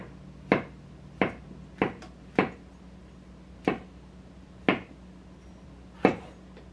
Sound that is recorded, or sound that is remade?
recorded